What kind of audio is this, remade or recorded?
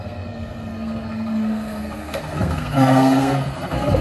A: remade